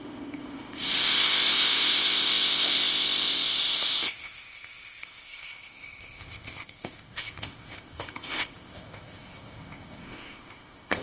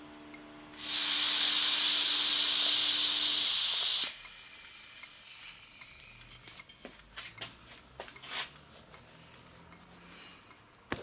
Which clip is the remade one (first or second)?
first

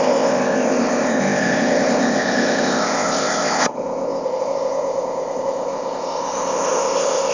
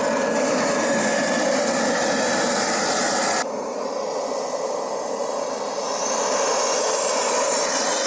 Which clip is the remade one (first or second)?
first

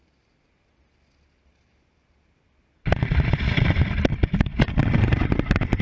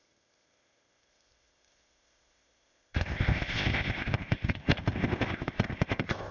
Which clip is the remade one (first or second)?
second